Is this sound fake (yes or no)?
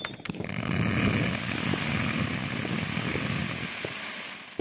no